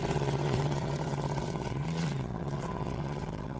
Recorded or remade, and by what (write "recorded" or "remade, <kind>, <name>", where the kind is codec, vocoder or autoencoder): remade, vocoder, WaveNeXt